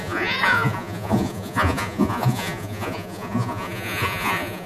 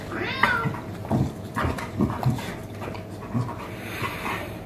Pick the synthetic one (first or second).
first